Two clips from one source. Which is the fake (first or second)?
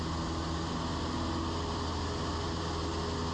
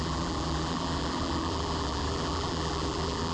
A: second